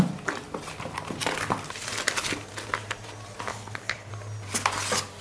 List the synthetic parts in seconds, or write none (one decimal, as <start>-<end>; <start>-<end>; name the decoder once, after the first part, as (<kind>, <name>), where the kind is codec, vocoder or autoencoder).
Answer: 3.5-4.1 (codec, HILCodec)